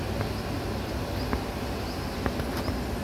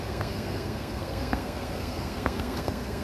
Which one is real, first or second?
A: first